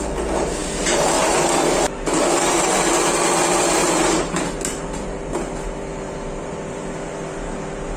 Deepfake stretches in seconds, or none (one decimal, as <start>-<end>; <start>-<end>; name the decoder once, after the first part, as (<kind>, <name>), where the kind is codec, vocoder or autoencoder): 3.8-8.0 (vocoder, BigVGAN v2)